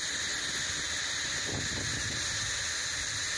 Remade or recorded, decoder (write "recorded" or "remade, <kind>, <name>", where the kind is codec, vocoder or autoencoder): recorded